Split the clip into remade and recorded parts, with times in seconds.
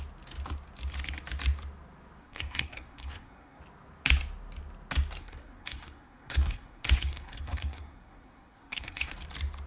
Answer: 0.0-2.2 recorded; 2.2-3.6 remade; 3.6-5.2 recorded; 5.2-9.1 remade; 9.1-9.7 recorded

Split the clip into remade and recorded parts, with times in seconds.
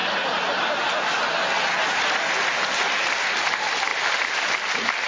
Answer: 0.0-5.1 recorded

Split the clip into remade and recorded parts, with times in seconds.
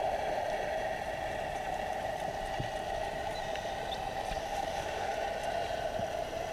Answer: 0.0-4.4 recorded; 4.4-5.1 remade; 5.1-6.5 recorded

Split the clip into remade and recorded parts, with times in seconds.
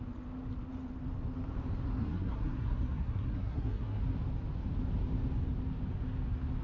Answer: 0.0-2.0 recorded; 2.0-4.0 remade; 4.0-6.6 recorded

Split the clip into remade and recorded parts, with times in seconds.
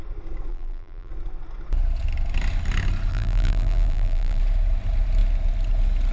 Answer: 0.0-0.5 recorded; 0.5-1.1 remade; 1.1-3.1 recorded; 3.1-4.4 remade; 4.4-6.1 recorded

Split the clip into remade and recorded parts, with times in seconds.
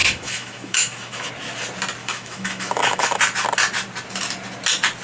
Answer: 0.0-1.3 remade; 1.3-2.0 recorded; 2.0-3.2 remade; 3.2-5.0 recorded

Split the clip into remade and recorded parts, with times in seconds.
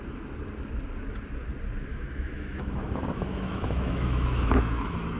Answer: 0.0-1.9 recorded; 1.9-5.2 remade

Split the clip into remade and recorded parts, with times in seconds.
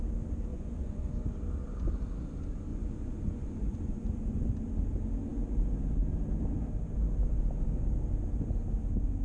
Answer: 0.0-0.5 recorded; 0.5-1.1 remade; 1.1-2.7 recorded; 2.7-4.5 remade; 4.5-9.2 recorded